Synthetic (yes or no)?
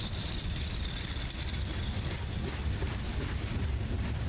yes